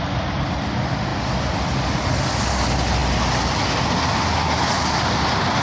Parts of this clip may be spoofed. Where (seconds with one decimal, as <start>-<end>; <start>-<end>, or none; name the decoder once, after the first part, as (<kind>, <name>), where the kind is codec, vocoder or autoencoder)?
none